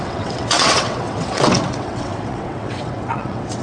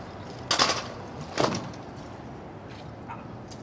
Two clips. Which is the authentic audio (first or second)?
second